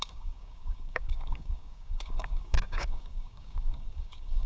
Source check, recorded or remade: remade